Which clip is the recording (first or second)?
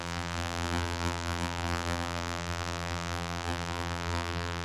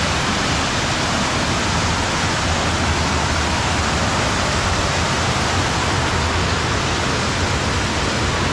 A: second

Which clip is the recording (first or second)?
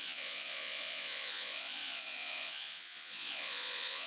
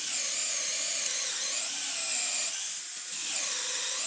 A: second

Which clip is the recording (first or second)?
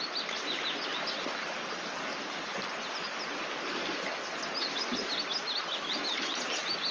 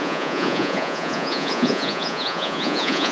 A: first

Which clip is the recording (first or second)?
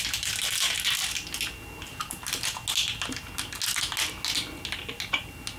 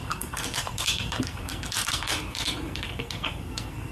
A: first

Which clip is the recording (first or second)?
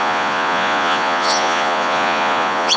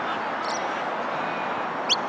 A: second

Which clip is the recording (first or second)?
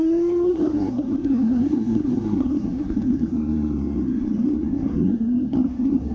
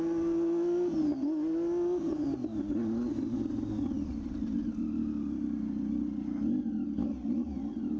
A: second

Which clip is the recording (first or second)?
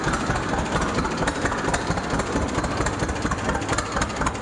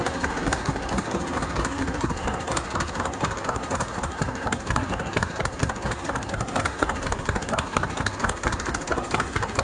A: first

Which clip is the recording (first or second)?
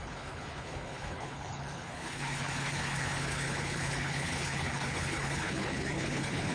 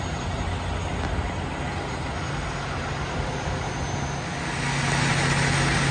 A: second